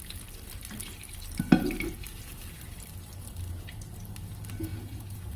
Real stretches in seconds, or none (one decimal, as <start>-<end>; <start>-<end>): 0.0-4.7